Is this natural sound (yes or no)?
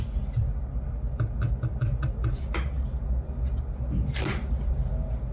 yes